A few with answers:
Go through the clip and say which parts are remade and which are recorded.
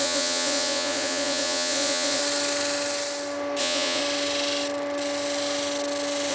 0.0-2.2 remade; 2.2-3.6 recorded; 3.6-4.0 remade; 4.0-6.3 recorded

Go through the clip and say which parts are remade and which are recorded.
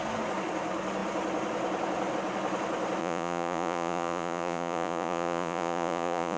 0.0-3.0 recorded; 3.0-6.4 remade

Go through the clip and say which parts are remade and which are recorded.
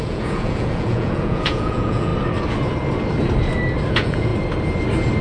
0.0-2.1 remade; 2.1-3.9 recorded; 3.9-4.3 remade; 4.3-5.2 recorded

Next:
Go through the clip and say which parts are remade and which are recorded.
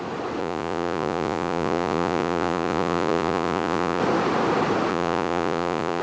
0.0-0.4 recorded; 0.4-4.0 remade; 4.0-4.9 recorded; 4.9-6.0 remade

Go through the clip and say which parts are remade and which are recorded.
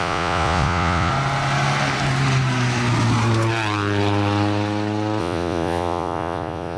0.0-1.1 remade; 1.1-5.2 recorded; 5.2-6.8 remade